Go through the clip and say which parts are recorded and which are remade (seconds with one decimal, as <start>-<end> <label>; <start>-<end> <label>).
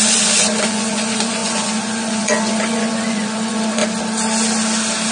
0.0-3.8 remade; 3.8-5.1 recorded